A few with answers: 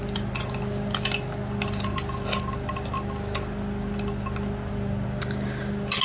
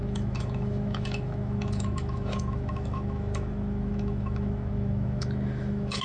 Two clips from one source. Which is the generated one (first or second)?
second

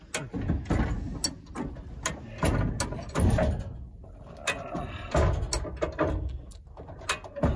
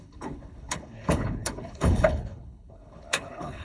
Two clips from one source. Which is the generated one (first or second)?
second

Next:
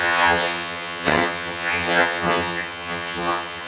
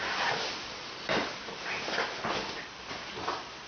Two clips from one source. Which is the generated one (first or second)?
first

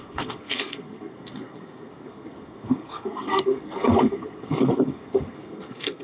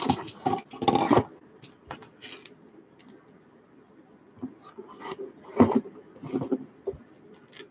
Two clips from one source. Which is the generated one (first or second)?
first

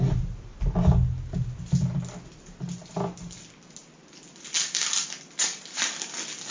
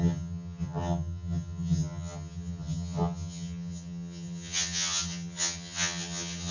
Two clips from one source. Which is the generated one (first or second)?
second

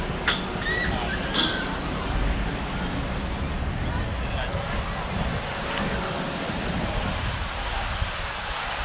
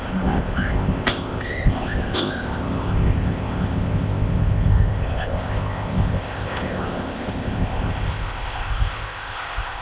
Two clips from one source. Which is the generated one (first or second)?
second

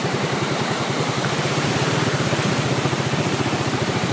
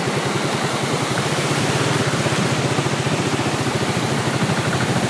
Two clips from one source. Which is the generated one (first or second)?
first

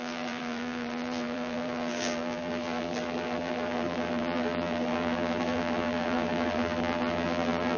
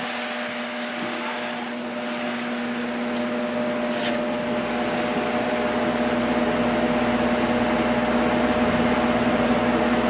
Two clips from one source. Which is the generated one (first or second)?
first